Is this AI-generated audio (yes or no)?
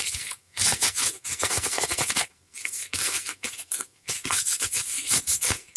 yes